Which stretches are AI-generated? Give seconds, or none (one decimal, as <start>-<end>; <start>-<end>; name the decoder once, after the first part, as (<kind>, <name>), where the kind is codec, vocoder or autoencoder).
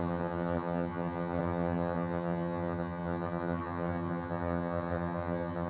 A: 0.0-5.7 (vocoder, HiFi-GAN)